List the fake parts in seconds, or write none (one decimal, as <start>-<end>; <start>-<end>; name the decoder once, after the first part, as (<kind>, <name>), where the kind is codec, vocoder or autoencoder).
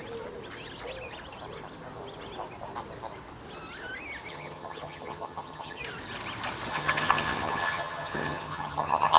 4.3-5.8 (vocoder, HiFi-GAN); 6.7-9.2